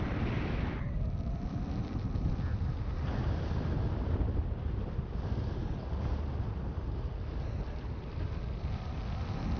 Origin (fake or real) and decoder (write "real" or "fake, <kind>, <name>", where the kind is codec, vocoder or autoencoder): real